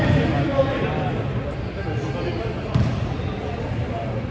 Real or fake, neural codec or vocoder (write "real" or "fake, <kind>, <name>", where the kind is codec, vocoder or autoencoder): real